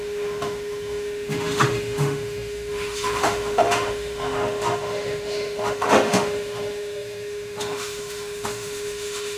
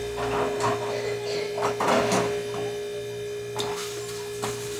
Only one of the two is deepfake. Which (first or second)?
first